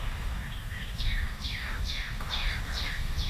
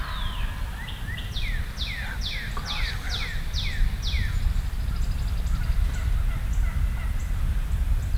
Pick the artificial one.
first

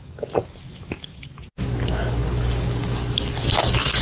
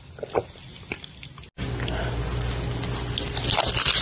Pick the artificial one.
first